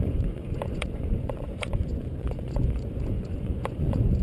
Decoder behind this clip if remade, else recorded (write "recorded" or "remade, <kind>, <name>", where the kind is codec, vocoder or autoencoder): remade, vocoder, Vocos